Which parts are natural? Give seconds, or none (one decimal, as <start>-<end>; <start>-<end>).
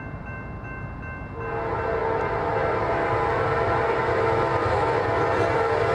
0.0-5.9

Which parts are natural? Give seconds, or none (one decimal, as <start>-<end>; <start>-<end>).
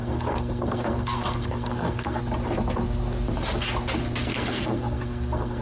2.2-4.2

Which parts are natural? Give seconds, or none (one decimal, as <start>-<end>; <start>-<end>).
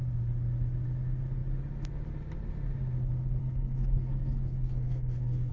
0.0-3.4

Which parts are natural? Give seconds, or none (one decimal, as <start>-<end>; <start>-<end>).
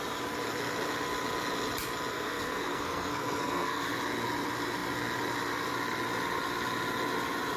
0.0-2.1; 3.8-7.6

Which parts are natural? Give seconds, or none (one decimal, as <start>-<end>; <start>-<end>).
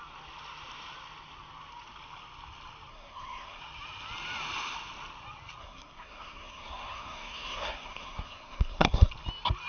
0.0-2.9; 3.6-5.6; 9.1-9.7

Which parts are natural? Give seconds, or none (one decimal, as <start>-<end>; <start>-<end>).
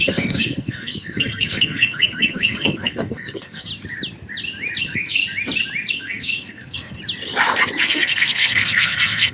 3.7-4.8; 5.2-5.9; 7.0-7.8